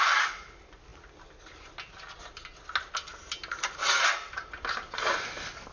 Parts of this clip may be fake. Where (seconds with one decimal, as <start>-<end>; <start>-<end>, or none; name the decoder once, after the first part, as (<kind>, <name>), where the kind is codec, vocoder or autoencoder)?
none